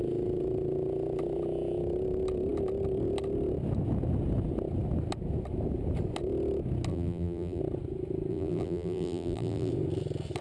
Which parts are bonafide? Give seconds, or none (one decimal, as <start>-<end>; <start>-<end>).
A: 0.0-6.9; 7.6-8.3; 9.7-10.4